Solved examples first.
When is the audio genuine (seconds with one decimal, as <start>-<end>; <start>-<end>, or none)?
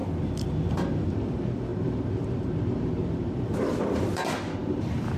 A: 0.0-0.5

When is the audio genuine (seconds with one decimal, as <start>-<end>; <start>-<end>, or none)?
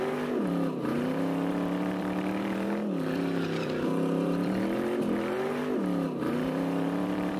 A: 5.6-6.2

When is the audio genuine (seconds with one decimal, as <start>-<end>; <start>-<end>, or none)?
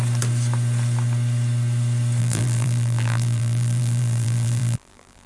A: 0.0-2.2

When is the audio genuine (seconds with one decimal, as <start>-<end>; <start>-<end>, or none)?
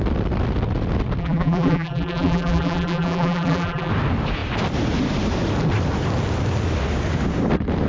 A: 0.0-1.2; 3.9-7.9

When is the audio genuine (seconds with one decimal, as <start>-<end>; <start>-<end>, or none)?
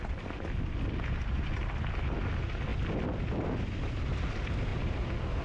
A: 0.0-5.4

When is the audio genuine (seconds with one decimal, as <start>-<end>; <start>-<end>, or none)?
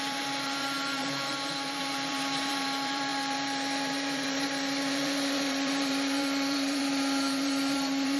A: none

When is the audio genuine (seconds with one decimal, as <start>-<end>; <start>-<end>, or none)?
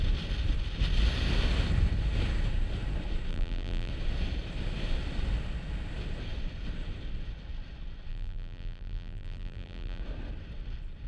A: 0.0-3.3; 3.9-8.1; 10.0-11.1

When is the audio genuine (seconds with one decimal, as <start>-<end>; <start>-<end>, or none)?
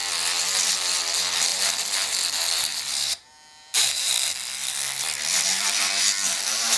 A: none